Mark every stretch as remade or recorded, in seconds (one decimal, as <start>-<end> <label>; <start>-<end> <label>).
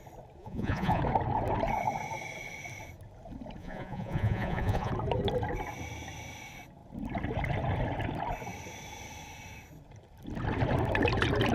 0.0-0.4 recorded; 0.4-1.0 remade; 1.0-3.6 recorded; 3.6-4.9 remade; 4.9-11.5 recorded